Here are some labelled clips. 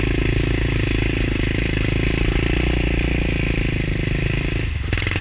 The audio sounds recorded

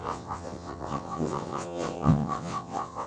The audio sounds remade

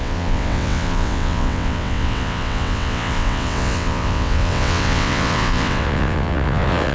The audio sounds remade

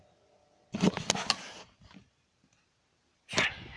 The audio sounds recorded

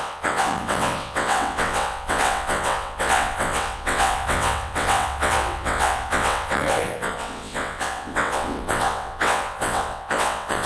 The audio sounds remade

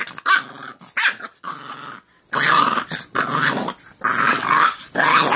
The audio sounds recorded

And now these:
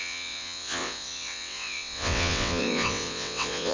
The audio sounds remade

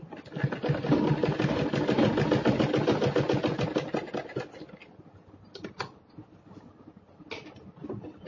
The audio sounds recorded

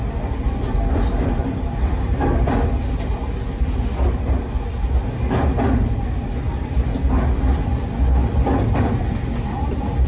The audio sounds recorded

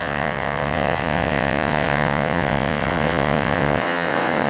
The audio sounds remade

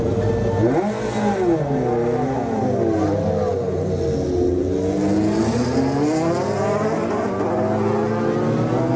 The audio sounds recorded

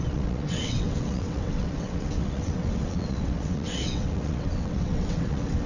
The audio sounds remade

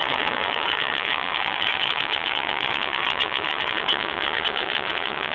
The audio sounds remade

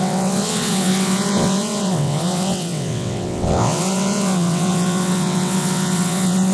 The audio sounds remade